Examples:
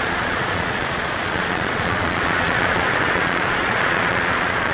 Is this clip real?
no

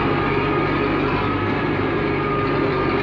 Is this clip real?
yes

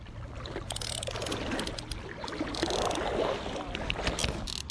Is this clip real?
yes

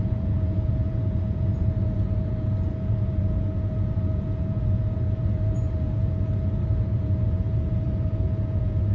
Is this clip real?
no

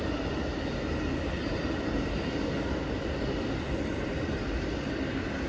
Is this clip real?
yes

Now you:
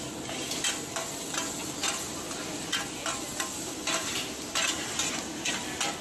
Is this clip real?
yes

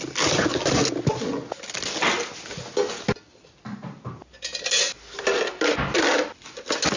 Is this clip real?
yes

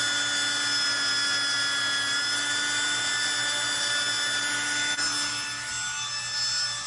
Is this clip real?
yes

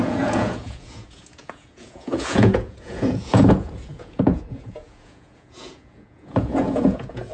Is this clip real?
no